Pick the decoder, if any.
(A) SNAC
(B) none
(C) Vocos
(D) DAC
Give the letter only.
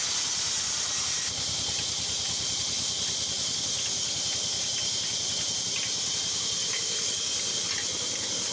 B